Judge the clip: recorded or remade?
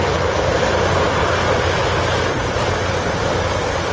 recorded